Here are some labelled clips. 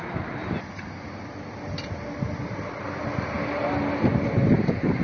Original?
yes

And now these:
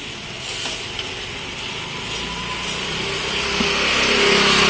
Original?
yes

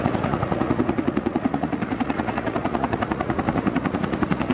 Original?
no